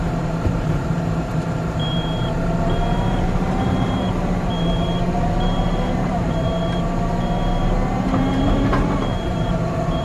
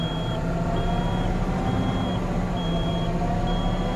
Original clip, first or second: second